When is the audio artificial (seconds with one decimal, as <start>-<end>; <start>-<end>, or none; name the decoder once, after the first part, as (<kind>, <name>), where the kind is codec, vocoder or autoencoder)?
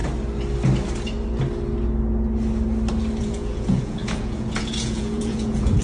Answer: 3.2-5.8 (vocoder, Vocos)